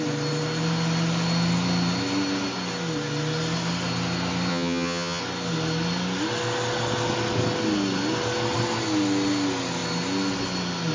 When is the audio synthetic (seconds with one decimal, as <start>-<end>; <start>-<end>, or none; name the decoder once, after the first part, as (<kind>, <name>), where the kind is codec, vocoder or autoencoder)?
4.5-5.2 (vocoder, HiFi-GAN)